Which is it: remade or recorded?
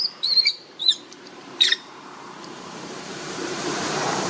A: remade